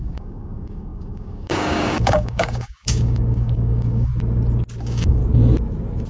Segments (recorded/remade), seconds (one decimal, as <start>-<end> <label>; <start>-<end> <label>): 0.0-4.1 remade; 4.1-4.8 recorded; 4.8-5.2 remade; 5.2-6.1 recorded